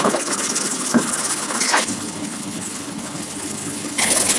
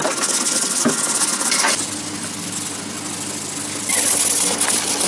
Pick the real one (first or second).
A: second